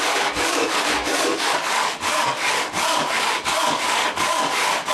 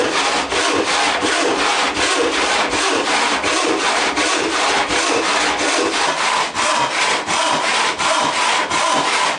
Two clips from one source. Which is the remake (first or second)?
first